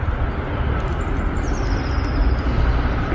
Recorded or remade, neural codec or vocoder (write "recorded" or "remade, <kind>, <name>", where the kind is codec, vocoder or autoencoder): recorded